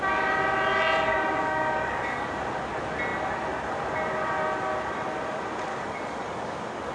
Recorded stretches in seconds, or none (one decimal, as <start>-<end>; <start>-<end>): 0.0-1.1; 2.3-5.7